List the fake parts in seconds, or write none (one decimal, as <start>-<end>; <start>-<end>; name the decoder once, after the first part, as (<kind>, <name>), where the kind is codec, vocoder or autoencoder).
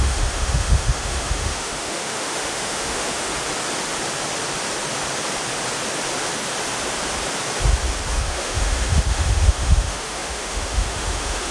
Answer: 0.0-3.3 (autoencoder, DAC-VAE); 8.1-11.5